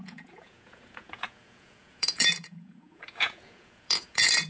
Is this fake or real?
fake